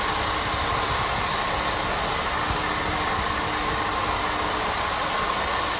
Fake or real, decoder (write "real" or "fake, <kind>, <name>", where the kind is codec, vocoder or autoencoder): real